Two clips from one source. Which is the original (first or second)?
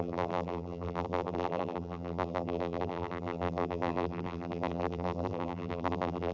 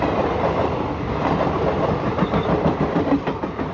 second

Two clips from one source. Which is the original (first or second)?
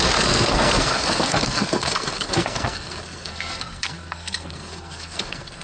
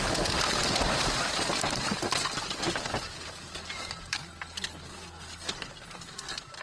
second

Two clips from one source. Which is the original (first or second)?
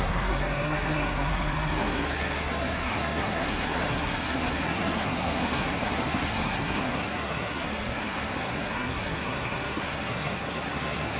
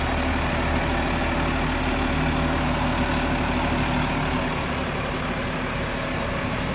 second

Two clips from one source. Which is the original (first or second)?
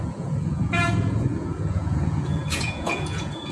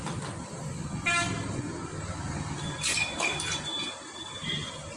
second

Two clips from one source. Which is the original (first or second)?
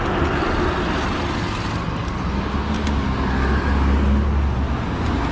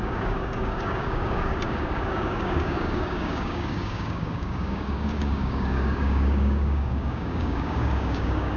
first